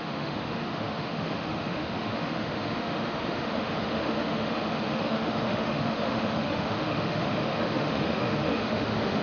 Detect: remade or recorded remade